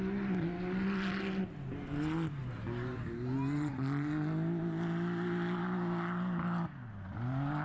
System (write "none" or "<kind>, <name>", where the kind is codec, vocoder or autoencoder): none